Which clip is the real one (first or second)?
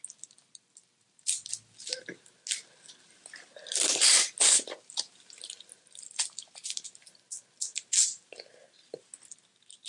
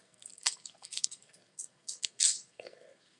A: first